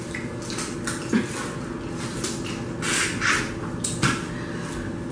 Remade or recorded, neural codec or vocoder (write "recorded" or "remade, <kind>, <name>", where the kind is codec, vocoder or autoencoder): recorded